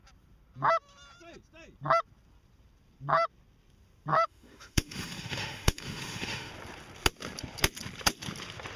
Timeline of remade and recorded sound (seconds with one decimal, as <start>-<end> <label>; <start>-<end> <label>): 0.0-4.1 recorded; 4.1-6.5 remade; 6.5-8.8 recorded